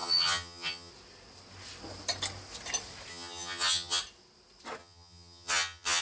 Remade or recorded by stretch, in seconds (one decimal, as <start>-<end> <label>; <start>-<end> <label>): 0.0-0.9 remade; 0.9-3.1 recorded; 3.1-4.0 remade; 4.0-4.8 recorded; 4.8-6.0 remade